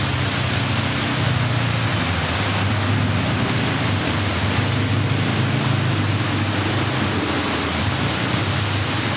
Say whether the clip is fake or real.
real